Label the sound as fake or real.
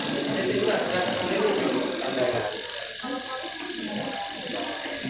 real